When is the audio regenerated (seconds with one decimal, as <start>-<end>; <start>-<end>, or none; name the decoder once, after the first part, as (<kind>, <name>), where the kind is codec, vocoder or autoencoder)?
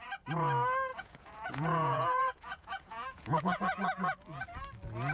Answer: 0.9-4.0 (vocoder, Vocos)